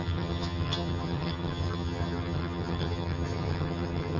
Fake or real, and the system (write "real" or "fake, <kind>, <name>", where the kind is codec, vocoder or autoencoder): fake, vocoder, HiFi-GAN